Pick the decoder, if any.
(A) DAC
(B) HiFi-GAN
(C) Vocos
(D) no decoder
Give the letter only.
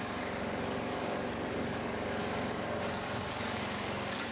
A